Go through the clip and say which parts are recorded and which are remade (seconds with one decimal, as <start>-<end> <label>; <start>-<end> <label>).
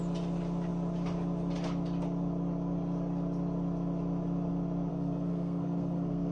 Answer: 0.0-4.9 recorded; 4.9-6.3 remade